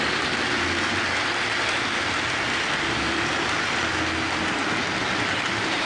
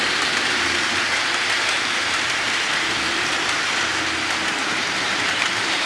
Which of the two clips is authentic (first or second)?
first